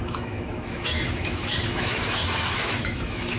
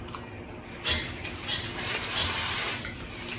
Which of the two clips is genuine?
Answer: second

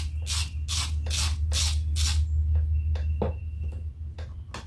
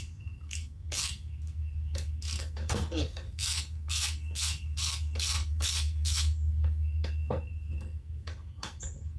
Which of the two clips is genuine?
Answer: first